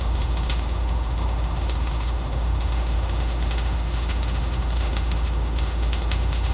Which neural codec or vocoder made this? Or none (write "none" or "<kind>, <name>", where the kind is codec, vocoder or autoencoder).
autoencoder, DAC-VAE